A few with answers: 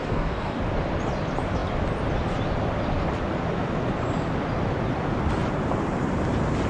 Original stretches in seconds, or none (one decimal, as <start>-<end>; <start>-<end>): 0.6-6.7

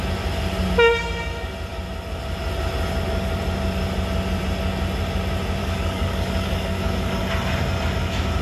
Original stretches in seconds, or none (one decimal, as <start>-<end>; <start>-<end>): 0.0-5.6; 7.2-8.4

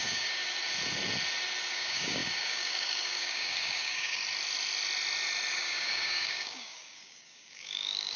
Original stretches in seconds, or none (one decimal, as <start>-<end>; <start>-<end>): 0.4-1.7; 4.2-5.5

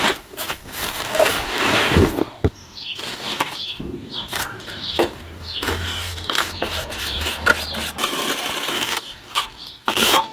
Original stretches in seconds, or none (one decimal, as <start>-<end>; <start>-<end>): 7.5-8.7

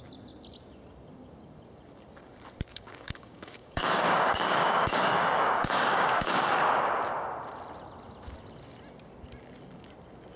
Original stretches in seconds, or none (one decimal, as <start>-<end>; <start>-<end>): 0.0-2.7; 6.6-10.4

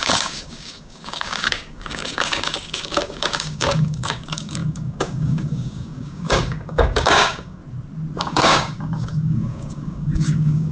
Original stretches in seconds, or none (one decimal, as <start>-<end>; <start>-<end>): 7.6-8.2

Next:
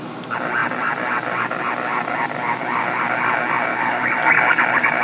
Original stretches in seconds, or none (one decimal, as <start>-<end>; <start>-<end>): 0.0-3.7; 4.4-5.0

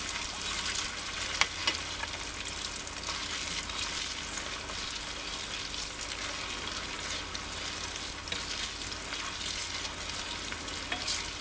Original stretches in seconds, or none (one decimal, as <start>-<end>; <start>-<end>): 0.0-11.4